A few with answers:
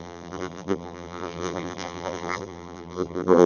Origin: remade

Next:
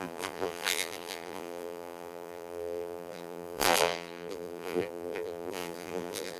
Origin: remade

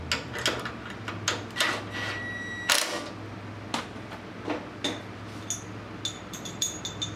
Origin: recorded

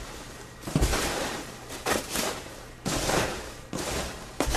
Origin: remade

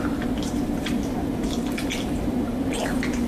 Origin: remade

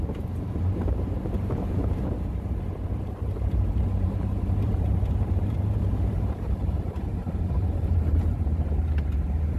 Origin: remade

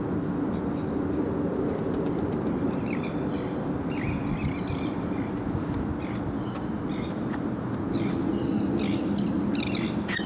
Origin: recorded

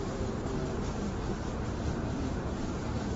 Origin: remade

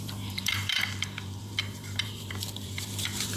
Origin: remade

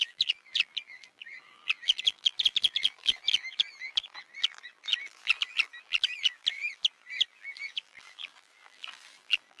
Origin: remade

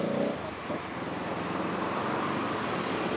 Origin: recorded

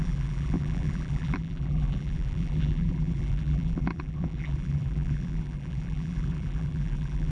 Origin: remade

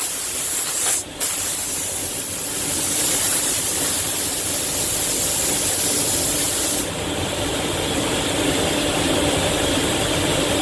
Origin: remade